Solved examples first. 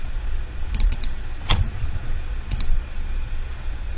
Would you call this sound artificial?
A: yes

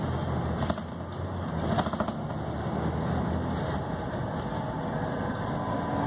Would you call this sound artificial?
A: no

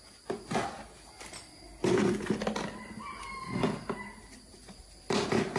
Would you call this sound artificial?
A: no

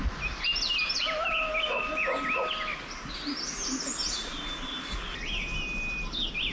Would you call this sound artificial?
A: no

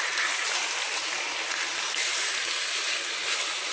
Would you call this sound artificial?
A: no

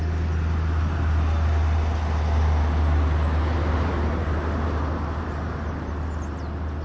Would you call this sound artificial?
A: no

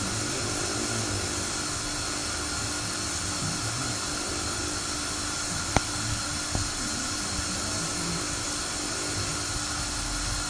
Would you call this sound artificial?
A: no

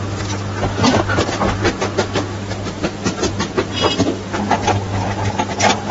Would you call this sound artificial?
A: no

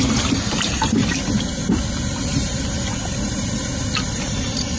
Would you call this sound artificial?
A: no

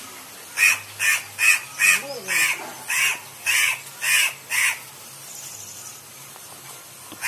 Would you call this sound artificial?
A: no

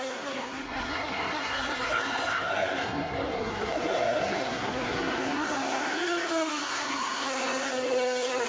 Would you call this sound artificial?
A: yes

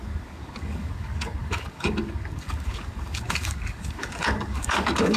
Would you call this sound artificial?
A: yes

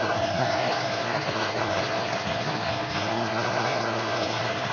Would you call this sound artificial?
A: yes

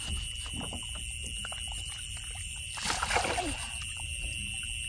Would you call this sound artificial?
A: no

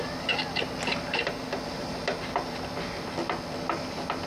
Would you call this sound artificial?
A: no